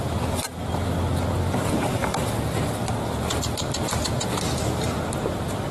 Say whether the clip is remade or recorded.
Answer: recorded